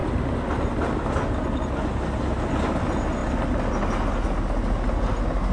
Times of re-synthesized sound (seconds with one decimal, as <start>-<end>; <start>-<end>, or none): none